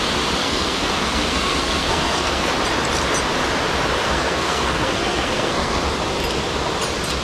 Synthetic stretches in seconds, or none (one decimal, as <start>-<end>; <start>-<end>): 0.4-2.5; 4.0-5.8